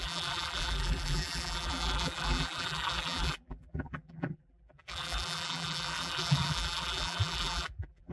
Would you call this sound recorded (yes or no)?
no